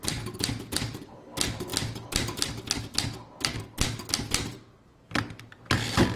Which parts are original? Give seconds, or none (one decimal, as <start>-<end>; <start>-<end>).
0.0-6.2